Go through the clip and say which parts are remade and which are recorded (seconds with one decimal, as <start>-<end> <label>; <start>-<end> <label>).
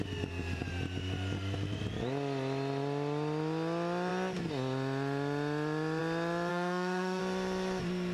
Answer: 0.0-6.5 recorded; 6.5-7.2 remade; 7.2-8.1 recorded